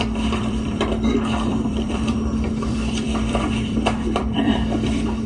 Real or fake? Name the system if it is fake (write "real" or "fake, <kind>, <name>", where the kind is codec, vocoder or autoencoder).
fake, vocoder, BigVGAN v2